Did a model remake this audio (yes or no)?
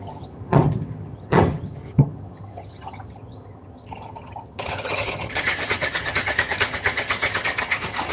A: yes